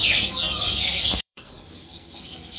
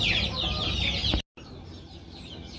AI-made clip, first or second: first